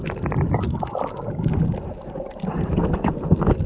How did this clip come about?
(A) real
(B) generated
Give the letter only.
B